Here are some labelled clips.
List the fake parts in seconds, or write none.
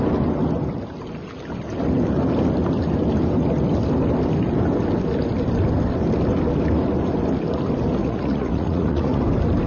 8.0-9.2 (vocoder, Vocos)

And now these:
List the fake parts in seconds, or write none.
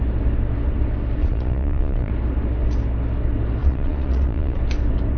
1.2-2.1 (vocoder, Vocos); 3.6-4.6